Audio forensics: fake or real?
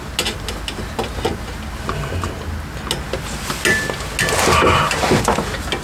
real